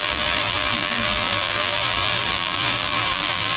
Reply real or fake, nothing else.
fake